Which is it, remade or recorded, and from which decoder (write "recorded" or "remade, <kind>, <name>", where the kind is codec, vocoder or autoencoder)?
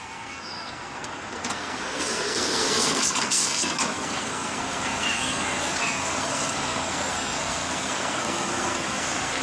remade, codec, SNAC